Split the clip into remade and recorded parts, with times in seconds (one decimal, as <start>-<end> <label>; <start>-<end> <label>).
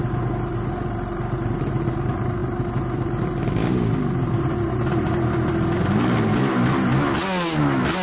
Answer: 0.0-8.0 recorded